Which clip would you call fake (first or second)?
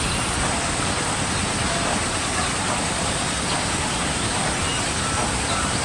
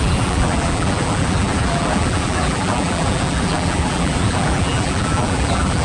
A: second